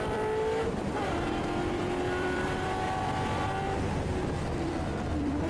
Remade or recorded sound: remade